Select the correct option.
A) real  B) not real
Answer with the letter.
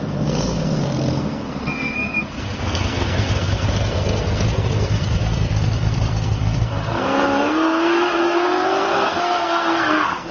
B